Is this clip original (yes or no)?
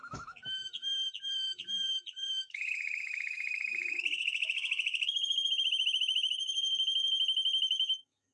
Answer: no